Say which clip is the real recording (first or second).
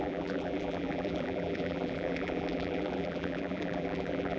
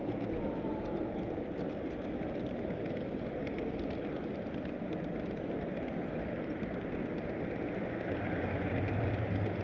second